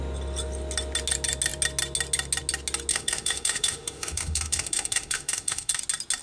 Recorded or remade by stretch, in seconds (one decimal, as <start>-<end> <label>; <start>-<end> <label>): 0.0-2.9 recorded; 2.9-5.8 remade; 5.8-6.2 recorded